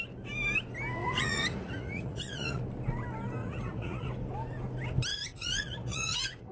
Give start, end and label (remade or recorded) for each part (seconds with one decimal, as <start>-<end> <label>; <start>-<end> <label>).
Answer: 0.0-1.0 recorded; 1.0-2.6 remade; 2.6-3.4 recorded; 3.4-4.1 remade; 4.1-5.1 recorded; 5.1-6.5 remade